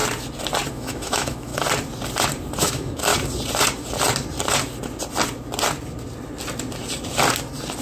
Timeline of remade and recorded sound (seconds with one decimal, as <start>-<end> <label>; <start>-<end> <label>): 0.0-0.7 recorded; 0.7-1.5 remade; 1.5-2.6 recorded; 2.6-3.1 remade; 3.1-7.8 recorded